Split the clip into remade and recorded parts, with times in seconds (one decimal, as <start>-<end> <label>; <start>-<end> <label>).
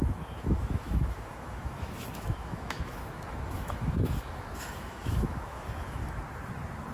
0.0-6.0 remade; 6.0-6.9 recorded